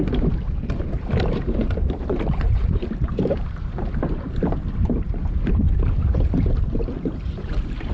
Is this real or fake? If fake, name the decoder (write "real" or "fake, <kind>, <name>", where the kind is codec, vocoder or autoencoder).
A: fake, vocoder, BigVGAN v2